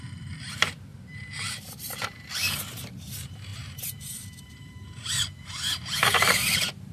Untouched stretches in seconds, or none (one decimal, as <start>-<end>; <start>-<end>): none

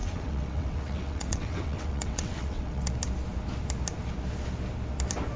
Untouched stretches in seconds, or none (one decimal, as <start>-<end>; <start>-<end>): 2.9-5.4

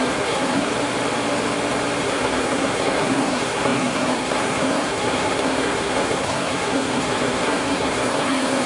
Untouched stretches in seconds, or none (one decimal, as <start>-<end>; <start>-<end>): 0.7-2.0

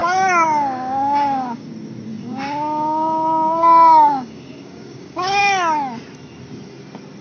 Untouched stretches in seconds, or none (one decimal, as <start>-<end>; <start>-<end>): 1.7-2.1; 5.4-7.2

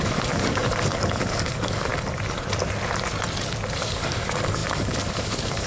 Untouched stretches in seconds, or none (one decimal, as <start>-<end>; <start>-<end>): 1.9-3.8

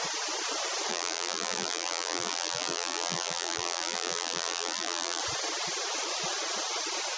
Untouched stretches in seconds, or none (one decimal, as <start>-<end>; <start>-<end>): 0.0-0.9; 5.2-7.2